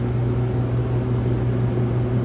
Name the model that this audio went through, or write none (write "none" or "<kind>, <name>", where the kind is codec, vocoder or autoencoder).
none